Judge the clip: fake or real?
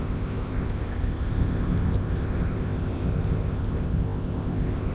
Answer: fake